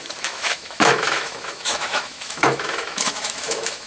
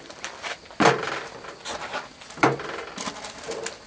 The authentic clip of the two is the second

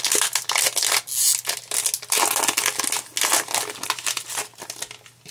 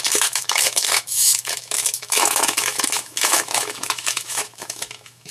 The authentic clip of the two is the first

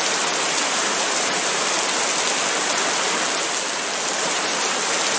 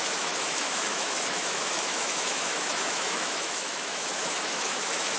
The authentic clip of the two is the first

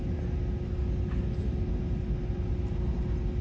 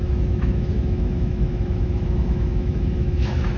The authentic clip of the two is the first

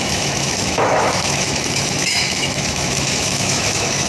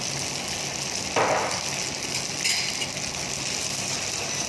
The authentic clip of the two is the second